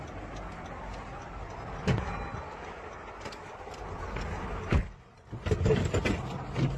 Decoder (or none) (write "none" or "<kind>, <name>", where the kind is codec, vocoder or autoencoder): none